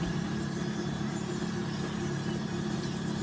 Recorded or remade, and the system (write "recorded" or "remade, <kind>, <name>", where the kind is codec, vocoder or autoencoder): recorded